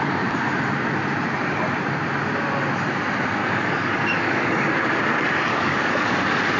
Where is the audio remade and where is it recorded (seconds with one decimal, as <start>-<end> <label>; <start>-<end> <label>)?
0.0-3.4 recorded; 3.4-4.7 remade; 4.7-5.5 recorded; 5.5-6.6 remade